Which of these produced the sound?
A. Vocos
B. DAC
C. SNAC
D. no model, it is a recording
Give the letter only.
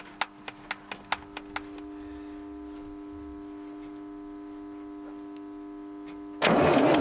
D